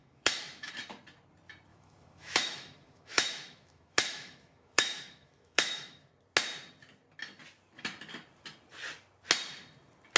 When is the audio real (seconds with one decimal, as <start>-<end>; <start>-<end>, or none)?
0.7-1.7; 6.1-10.2